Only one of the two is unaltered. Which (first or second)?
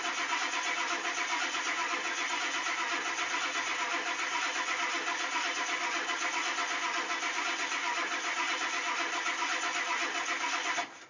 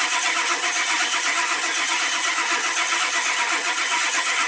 first